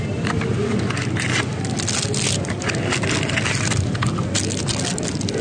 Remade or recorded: recorded